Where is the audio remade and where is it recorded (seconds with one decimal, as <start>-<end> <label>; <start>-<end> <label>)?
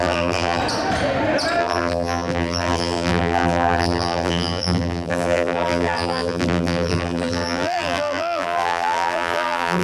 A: 0.0-0.6 remade; 0.6-1.6 recorded; 1.6-9.8 remade